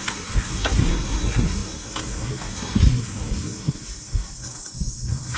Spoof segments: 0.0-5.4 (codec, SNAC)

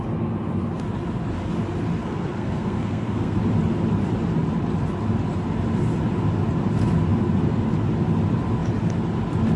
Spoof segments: 2.0-3.4 (codec, SNAC)

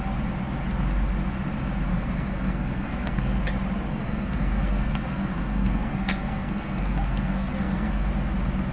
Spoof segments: 1.9-3.4 (codec, SNAC); 3.9-8.1

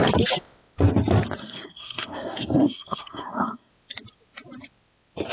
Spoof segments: 1.4-3.7 (codec, SNAC)

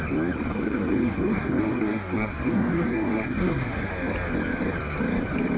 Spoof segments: 0.5-3.9 (codec, SNAC)